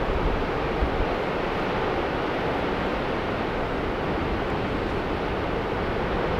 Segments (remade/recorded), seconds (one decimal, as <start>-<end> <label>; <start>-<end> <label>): 0.0-6.4 recorded